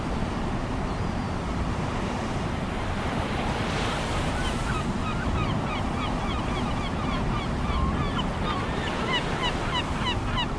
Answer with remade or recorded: recorded